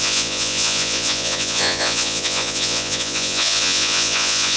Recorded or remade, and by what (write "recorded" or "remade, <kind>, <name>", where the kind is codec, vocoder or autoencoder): remade, vocoder, Vocos